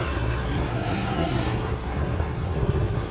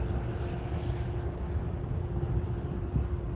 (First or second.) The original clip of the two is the second